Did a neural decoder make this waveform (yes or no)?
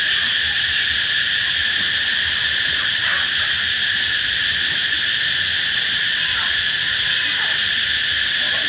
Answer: no